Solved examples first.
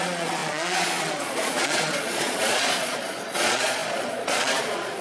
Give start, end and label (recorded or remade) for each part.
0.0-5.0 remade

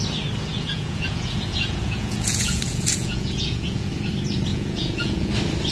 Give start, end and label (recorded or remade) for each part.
0.0-0.5 recorded; 0.5-3.9 remade; 3.9-4.5 recorded; 4.5-5.3 remade; 5.3-5.7 recorded

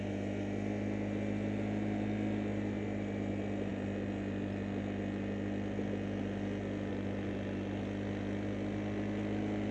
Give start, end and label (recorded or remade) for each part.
0.0-9.7 recorded

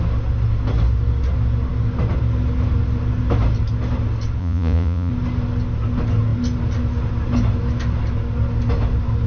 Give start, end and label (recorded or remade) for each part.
0.0-4.4 recorded; 4.4-5.1 remade; 5.1-9.3 recorded

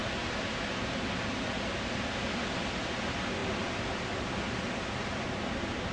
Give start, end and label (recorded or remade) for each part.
0.0-5.9 recorded

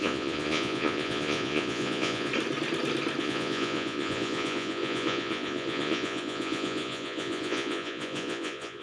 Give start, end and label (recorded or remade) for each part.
0.0-2.3 remade; 2.3-3.2 recorded; 3.2-8.8 remade

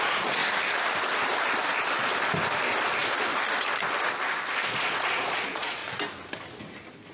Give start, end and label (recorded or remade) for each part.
0.0-0.4 remade; 0.4-4.7 recorded; 4.7-5.8 remade; 5.8-7.1 recorded

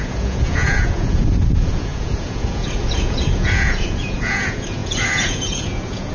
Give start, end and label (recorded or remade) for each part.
0.0-6.1 remade